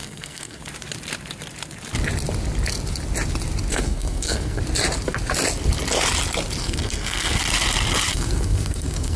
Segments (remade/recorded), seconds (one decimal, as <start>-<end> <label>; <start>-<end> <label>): 0.0-0.6 remade; 0.6-3.7 recorded; 3.7-4.6 remade; 4.6-6.6 recorded; 6.6-7.4 remade; 7.4-8.1 recorded; 8.1-9.2 remade

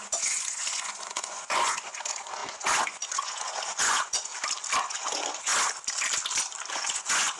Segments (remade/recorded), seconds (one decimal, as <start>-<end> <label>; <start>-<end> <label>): 0.0-4.3 remade; 4.3-4.8 recorded; 4.8-5.5 remade; 5.5-6.7 recorded; 6.7-7.4 remade

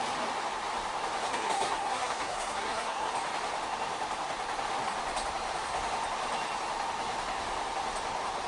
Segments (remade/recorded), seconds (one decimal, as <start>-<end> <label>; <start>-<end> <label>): 0.0-1.2 recorded; 1.2-3.1 remade; 3.1-8.5 recorded

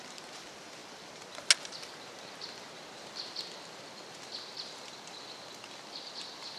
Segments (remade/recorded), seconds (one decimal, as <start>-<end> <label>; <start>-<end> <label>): 0.0-6.6 recorded

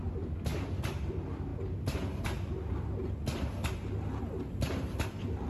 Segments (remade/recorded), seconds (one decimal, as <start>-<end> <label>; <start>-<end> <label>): 0.0-5.5 recorded

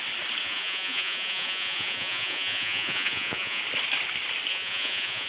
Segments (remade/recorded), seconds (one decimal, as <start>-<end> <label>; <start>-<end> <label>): 0.0-0.4 recorded; 0.4-3.6 remade; 3.6-4.5 recorded; 4.5-5.3 remade